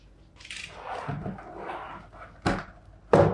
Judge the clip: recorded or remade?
recorded